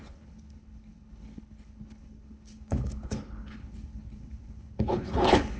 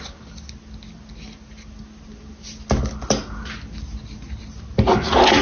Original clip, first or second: second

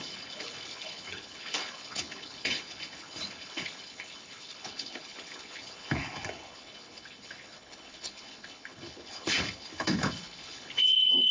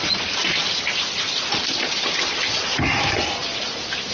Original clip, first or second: second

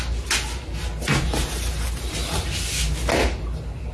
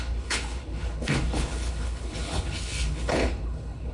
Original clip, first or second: first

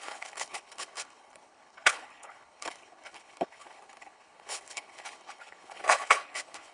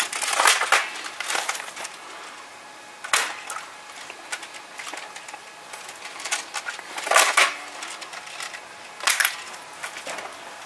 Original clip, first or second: second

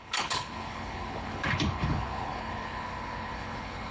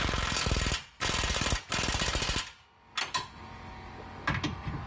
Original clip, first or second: second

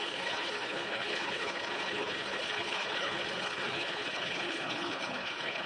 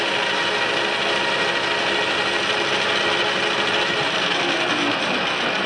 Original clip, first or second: second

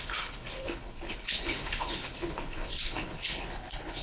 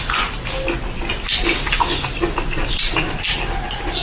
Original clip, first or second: second